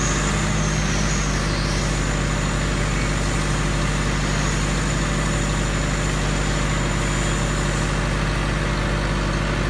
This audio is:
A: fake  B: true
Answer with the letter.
B